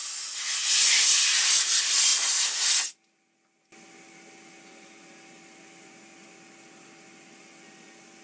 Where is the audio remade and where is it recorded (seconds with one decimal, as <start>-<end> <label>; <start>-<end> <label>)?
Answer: 0.0-8.2 recorded